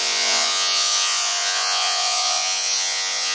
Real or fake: fake